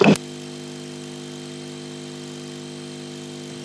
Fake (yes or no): no